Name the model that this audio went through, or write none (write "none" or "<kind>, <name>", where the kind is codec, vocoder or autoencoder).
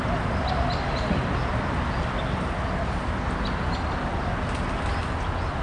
none